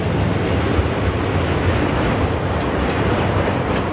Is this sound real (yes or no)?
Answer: yes